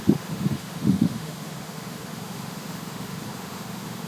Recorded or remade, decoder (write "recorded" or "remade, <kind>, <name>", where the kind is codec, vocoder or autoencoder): remade, autoencoder, DAC-VAE